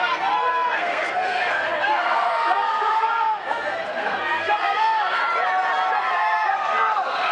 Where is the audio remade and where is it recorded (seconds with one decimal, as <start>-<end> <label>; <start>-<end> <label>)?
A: 0.0-5.2 remade; 5.2-6.1 recorded; 6.1-7.3 remade